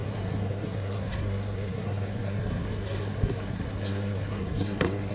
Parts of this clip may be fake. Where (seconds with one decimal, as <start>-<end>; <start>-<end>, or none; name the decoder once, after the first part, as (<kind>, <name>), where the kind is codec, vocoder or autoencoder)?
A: 0.0-5.1 (codec, SNAC)